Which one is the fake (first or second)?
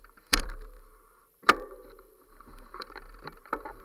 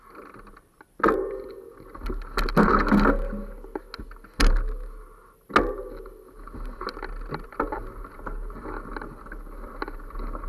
first